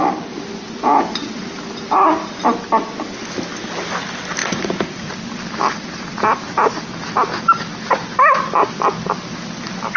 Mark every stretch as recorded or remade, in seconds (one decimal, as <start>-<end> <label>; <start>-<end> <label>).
0.0-4.4 recorded; 4.4-5.1 remade; 5.1-10.0 recorded